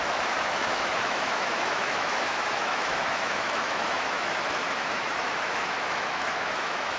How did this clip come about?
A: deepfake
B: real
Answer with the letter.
A